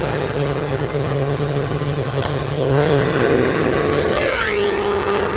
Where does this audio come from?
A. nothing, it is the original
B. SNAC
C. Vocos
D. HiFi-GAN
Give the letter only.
D